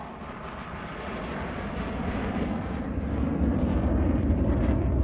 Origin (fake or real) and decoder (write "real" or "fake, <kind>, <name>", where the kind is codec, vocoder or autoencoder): real